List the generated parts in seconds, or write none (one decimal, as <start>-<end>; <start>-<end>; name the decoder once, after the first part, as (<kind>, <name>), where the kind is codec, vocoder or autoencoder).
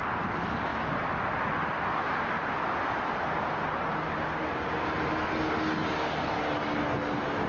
none